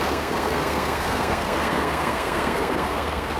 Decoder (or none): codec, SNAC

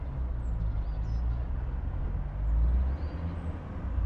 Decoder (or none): none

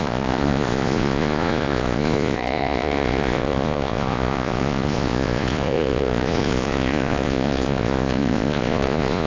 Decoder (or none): vocoder, Vocos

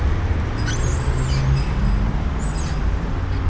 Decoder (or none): none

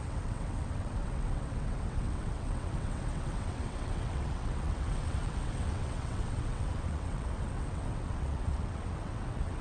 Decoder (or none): vocoder, WaveNeXt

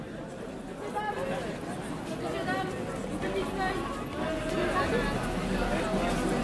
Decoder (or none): none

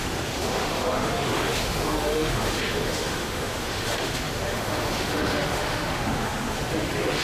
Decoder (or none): autoencoder, DAC-VAE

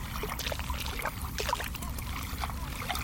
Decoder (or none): none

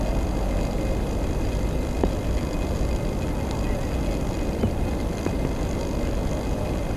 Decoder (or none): none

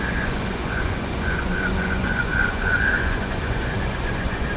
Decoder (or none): vocoder, Vocos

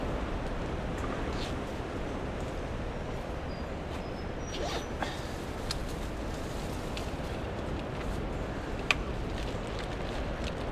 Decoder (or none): none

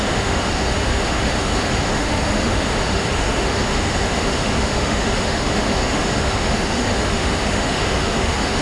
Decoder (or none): autoencoder, DAC-VAE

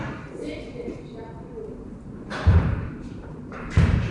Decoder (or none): vocoder, BigVGAN v2